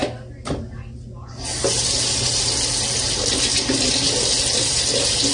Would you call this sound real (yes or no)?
yes